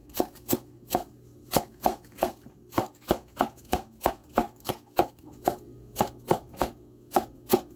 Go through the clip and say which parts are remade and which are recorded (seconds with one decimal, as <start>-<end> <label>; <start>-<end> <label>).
0.0-7.8 remade